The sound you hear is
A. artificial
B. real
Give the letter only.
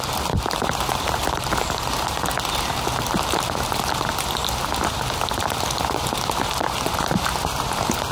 B